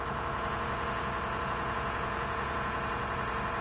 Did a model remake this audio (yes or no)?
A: yes